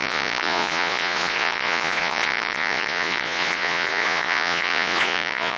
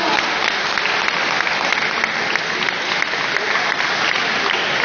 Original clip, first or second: second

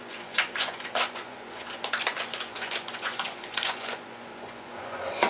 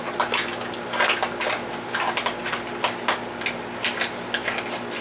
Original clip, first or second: second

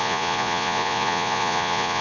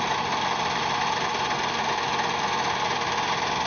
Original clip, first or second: second